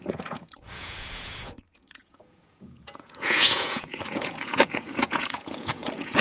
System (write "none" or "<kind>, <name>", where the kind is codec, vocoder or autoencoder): vocoder, Vocos